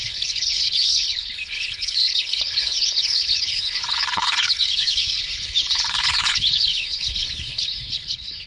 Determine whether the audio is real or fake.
fake